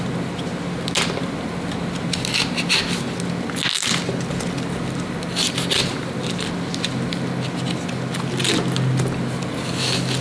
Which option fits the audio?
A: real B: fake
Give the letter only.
A